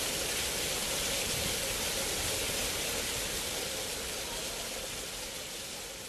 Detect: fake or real real